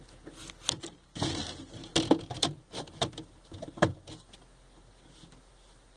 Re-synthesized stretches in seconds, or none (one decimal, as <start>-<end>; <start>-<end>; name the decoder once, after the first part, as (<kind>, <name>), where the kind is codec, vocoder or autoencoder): none